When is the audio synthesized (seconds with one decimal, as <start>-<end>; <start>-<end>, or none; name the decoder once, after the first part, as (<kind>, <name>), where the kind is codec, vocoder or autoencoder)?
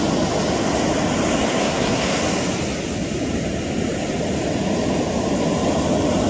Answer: 1.5-2.2 (codec, SNAC)